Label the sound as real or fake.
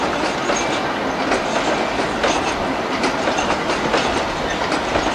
real